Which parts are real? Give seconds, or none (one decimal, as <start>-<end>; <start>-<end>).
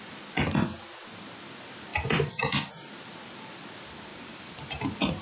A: 0.0-1.9; 2.7-4.1